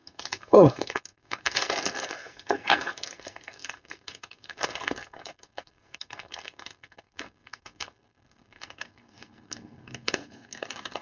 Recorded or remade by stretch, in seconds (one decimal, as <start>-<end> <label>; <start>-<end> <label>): 0.0-11.0 remade